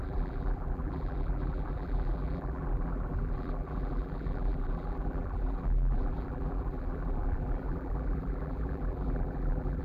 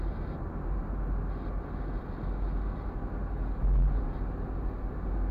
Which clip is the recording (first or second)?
second